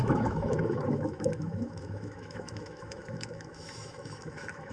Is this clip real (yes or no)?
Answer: no